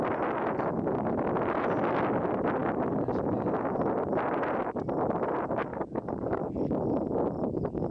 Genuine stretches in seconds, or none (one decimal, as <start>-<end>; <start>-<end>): 0.0-5.7; 6.4-7.9